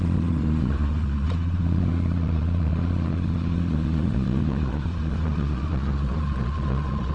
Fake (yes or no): yes